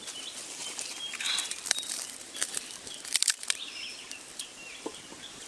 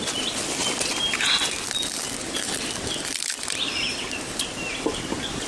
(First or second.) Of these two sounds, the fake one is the first